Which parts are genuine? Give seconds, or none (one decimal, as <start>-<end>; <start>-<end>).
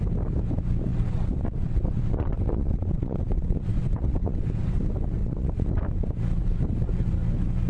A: 0.0-0.9; 4.8-5.2; 5.7-7.7